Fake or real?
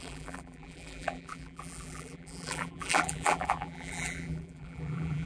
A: fake